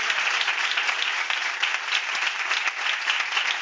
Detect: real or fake real